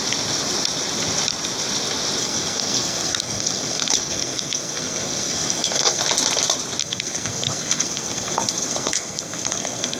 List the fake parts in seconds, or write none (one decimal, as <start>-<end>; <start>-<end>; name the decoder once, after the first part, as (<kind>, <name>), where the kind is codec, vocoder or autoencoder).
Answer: 2.2-6.0 (codec, SNAC); 6.8-10.0